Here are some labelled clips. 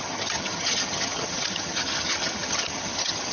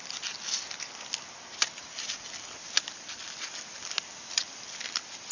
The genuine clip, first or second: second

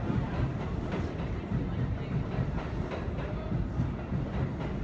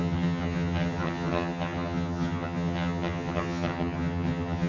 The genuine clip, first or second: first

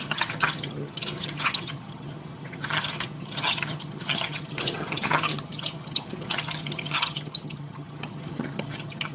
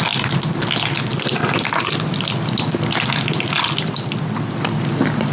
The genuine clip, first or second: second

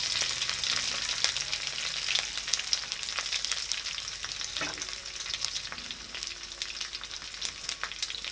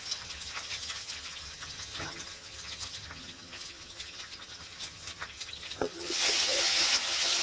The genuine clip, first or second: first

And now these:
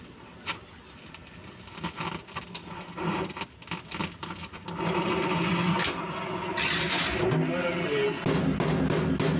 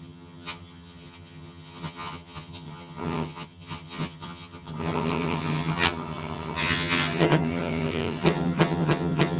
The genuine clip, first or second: first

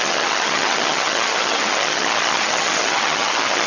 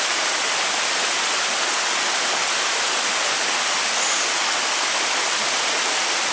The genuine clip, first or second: second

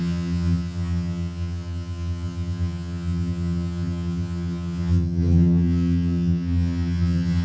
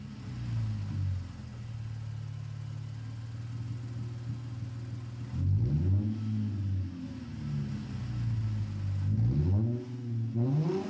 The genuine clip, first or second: second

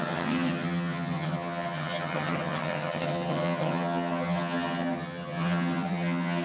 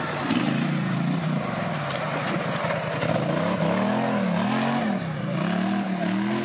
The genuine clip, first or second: second